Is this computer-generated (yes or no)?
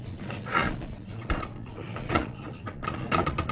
yes